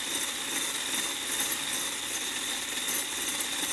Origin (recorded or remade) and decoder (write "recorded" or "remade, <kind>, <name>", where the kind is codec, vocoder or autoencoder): recorded